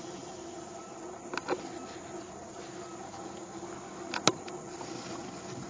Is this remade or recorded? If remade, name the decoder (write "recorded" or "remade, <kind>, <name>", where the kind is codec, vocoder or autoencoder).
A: recorded